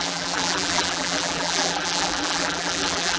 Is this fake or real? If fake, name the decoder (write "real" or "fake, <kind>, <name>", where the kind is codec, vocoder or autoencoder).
fake, vocoder, BigVGAN v2